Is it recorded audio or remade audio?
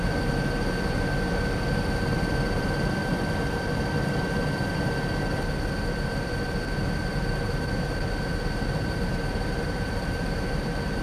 remade